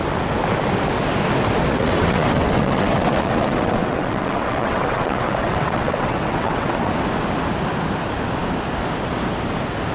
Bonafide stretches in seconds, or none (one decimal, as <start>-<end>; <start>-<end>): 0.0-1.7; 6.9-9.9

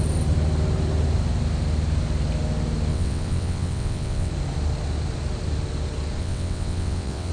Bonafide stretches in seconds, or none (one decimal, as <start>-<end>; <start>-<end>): 0.0-2.9; 4.3-6.2

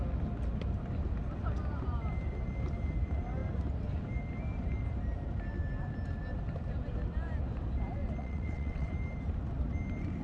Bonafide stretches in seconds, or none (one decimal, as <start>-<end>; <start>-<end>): 0.0-8.2; 8.9-10.2

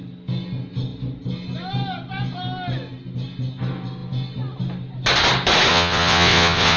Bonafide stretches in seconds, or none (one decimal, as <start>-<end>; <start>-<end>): 0.0-5.7

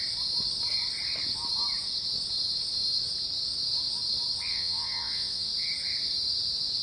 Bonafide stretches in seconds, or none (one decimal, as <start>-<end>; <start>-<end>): 0.0-4.5; 5.5-6.8

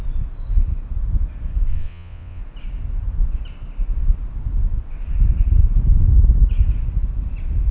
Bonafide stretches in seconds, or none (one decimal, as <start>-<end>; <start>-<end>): 0.0-1.7; 2.4-7.7